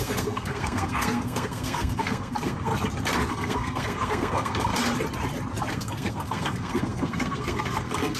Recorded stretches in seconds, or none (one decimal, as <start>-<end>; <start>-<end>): 2.7-3.3; 4.7-5.7